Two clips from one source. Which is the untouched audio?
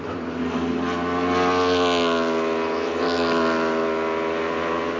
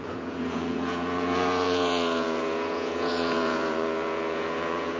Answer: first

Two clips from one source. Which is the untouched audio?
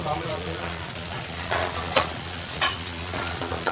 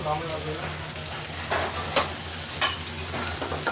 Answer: second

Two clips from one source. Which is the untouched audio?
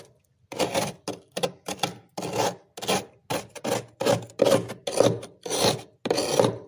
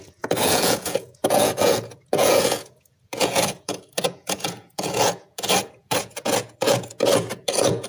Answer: first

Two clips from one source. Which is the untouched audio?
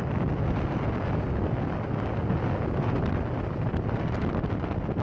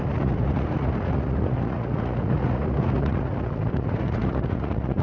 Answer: first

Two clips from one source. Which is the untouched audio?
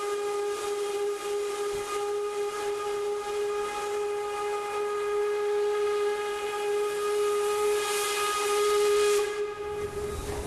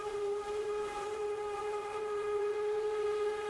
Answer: first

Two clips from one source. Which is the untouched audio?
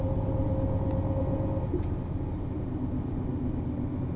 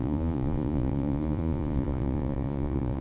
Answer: first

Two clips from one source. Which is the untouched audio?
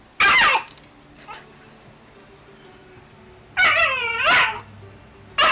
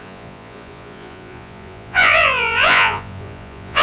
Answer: first